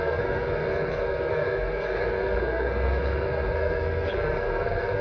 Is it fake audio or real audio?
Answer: fake